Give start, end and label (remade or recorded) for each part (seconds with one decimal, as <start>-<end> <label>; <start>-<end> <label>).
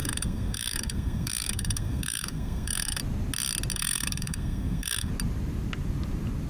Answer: 0.0-3.0 remade; 3.0-3.7 recorded; 3.7-5.1 remade; 5.1-6.5 recorded